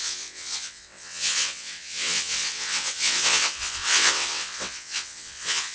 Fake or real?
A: fake